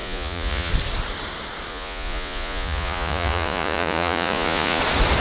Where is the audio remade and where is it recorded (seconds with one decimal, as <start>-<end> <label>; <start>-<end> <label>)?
0.0-0.7 remade; 0.7-1.7 recorded; 1.7-4.8 remade; 4.8-5.2 recorded